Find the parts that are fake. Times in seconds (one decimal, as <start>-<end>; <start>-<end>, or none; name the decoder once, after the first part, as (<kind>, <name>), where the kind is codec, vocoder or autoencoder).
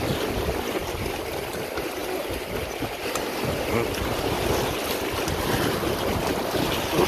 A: none